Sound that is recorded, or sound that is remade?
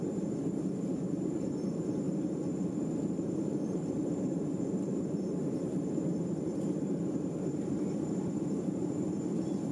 remade